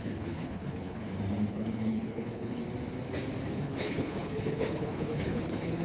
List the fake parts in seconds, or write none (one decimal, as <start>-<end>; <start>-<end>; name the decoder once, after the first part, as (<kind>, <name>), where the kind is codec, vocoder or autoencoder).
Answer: 0.0-1.0 (codec, HILCodec); 1.5-2.6; 3.5-5.8